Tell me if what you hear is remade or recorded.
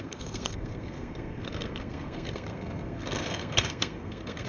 remade